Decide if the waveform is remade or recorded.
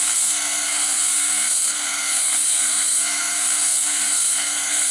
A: remade